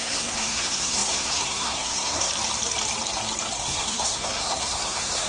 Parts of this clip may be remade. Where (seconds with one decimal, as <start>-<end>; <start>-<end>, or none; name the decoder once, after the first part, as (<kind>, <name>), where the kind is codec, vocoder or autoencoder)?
0.0-2.3 (codec, SNAC); 3.6-5.3